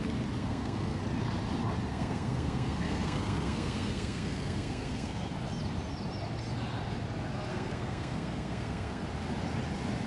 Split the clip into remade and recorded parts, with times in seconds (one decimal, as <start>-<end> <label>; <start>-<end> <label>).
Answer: 0.0-0.4 recorded; 0.4-1.0 remade; 1.0-1.9 recorded; 1.9-5.3 remade; 5.3-7.5 recorded; 7.5-9.0 remade; 9.0-10.1 recorded